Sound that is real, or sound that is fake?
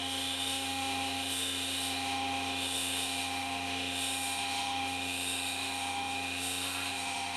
fake